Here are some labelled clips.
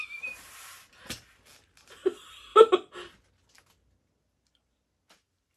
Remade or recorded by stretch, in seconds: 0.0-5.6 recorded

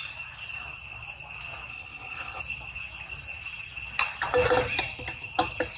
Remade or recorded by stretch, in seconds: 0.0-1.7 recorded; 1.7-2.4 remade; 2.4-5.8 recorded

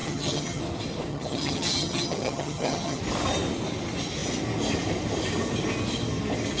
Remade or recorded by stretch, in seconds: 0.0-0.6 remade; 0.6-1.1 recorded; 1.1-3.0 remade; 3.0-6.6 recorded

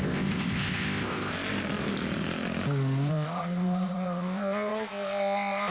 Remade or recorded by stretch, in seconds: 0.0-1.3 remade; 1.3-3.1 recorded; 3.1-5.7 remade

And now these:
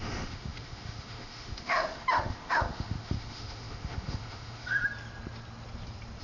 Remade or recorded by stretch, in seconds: 0.0-4.8 remade; 4.8-6.2 recorded

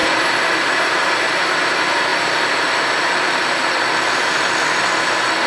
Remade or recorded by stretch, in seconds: 0.0-0.7 remade; 0.7-5.5 recorded

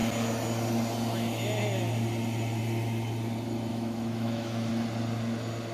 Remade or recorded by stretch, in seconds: 0.0-3.7 recorded; 3.7-4.7 remade; 4.7-5.7 recorded

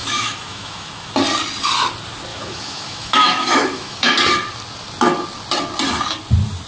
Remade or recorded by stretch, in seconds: 0.0-1.1 remade; 1.1-2.3 recorded; 2.3-4.2 remade; 4.2-6.7 recorded